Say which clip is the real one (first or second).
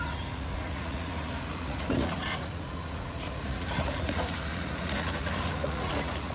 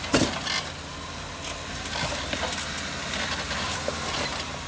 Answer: second